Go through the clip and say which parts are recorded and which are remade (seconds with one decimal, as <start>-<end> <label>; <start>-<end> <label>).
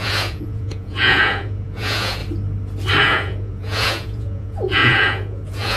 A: 0.0-2.2 remade; 2.2-3.0 recorded; 3.0-5.8 remade